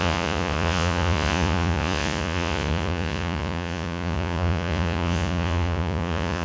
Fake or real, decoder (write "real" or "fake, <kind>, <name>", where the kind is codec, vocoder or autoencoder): fake, vocoder, Vocos